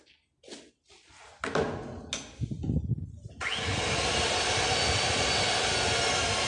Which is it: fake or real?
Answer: real